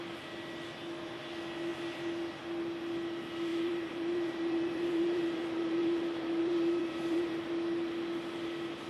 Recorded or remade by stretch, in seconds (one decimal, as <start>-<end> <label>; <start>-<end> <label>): 0.0-3.5 recorded; 3.5-7.5 remade; 7.5-8.9 recorded